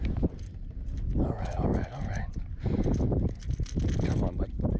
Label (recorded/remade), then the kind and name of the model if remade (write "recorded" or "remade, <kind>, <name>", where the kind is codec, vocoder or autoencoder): recorded